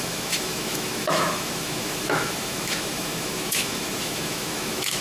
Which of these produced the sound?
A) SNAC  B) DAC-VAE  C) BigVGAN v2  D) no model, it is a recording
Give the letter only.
B